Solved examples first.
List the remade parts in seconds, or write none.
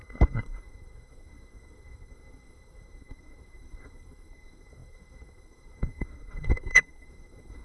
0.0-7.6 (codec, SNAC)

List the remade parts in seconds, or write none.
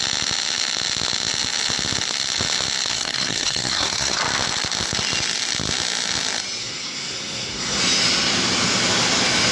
2.9-4.2 (codec, SNAC); 6.6-7.8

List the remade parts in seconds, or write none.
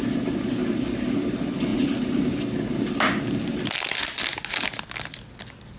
none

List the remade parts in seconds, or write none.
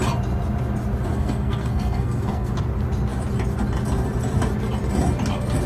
1.1-2.5 (codec, SNAC)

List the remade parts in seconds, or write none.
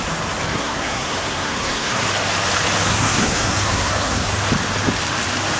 0.5-2.1 (codec, SNAC); 2.9-4.3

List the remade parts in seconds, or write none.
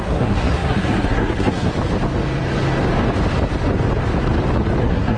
0.0-1.7 (codec, SNAC); 4.8-5.2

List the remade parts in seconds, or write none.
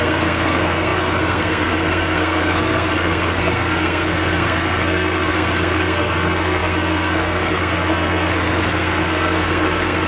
0.0-10.1 (codec, SNAC)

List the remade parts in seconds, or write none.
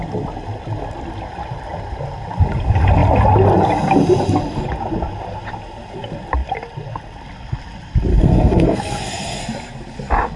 8.1-9.4 (codec, SNAC)